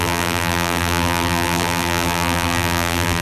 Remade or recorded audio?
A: remade